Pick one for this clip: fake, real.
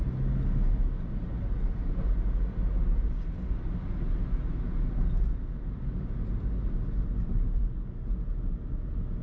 real